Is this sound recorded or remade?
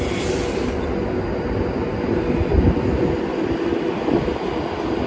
recorded